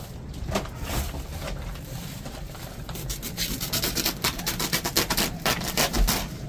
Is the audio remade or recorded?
remade